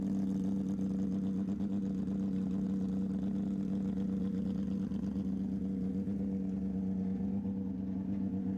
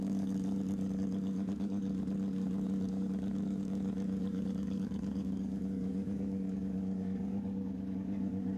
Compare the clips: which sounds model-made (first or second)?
second